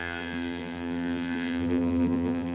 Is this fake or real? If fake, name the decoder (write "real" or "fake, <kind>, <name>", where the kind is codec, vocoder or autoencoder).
fake, vocoder, BigVGAN v2